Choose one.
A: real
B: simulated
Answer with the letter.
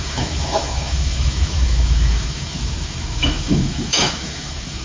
B